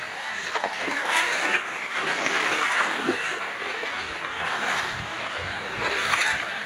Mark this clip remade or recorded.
remade